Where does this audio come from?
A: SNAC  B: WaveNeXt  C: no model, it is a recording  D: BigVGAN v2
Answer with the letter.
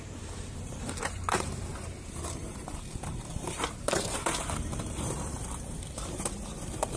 D